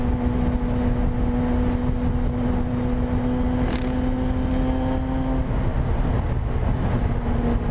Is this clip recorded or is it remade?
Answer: recorded